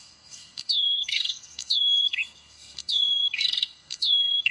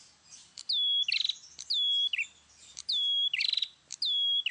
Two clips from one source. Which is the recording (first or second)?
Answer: second